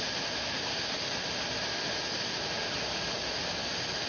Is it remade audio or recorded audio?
recorded